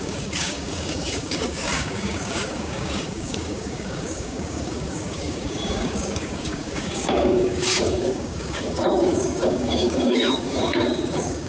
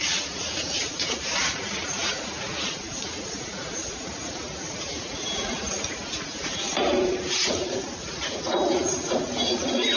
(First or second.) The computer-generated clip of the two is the first